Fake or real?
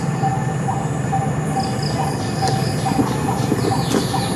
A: real